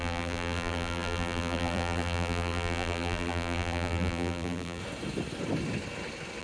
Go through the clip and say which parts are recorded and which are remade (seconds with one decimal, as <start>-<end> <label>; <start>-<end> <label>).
0.0-4.8 remade; 4.8-6.4 recorded